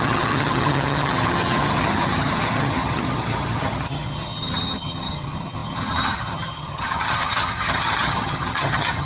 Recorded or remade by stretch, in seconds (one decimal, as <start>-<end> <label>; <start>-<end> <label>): 0.0-9.1 remade

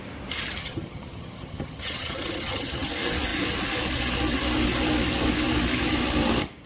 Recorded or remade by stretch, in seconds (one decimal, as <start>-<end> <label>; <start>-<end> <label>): 0.0-0.6 recorded; 0.6-2.9 remade; 2.9-6.7 recorded

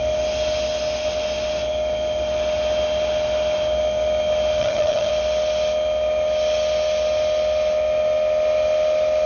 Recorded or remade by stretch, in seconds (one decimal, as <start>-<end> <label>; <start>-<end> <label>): 0.0-4.6 recorded; 4.6-5.1 remade; 5.1-9.3 recorded

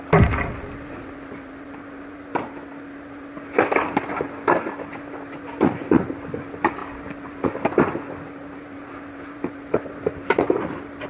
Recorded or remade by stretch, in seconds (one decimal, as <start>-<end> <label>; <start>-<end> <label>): 0.0-11.1 recorded

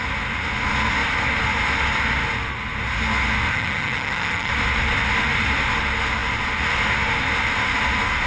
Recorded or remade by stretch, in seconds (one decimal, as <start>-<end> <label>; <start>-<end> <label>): 0.0-3.5 recorded; 3.5-4.5 remade; 4.5-8.3 recorded